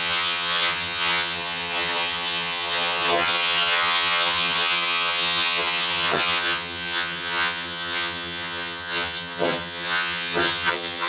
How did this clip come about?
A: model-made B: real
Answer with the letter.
A